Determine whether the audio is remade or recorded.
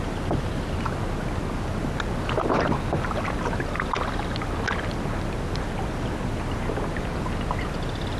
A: recorded